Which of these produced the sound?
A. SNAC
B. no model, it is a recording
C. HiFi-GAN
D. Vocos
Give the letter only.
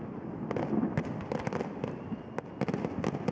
B